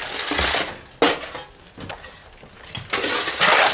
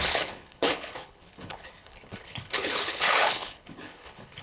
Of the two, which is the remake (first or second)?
second